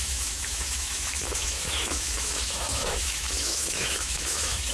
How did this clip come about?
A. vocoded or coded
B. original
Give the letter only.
A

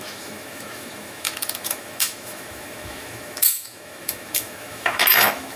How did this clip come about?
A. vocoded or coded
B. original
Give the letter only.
A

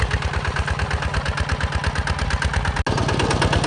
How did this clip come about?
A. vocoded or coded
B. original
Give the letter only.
B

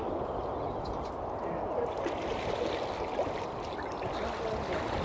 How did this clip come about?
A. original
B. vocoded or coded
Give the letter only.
A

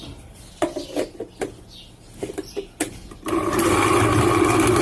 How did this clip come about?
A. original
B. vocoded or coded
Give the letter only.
A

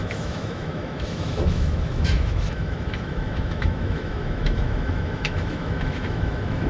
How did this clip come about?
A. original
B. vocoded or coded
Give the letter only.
B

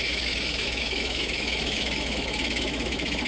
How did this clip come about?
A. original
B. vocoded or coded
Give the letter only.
B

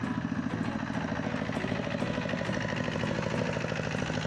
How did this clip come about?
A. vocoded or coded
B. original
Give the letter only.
B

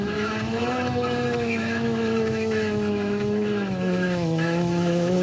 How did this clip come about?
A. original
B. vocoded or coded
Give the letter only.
B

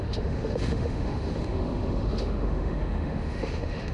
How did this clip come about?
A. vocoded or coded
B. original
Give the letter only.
A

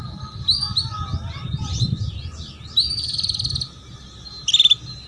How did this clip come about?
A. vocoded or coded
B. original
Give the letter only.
B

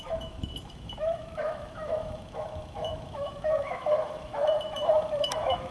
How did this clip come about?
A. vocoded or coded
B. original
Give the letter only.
A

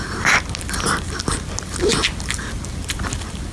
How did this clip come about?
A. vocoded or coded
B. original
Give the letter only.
B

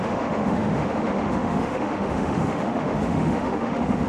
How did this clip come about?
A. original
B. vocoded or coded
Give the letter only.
B